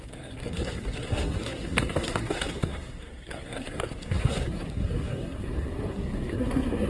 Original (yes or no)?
no